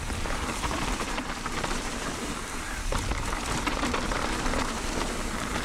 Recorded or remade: remade